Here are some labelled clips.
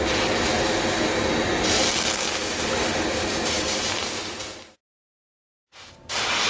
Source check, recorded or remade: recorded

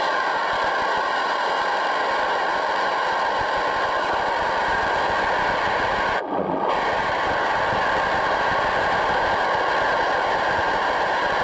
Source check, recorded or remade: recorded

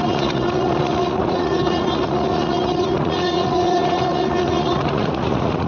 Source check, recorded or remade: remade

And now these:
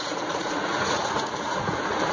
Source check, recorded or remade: remade